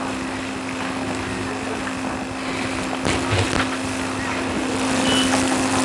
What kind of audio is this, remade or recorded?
recorded